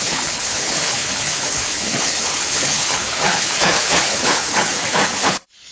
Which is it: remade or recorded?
remade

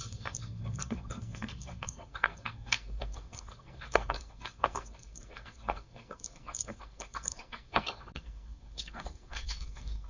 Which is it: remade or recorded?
remade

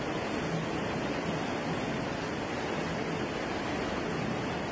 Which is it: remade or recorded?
recorded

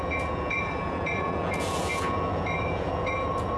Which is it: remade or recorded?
remade